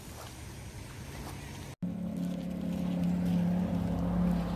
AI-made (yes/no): no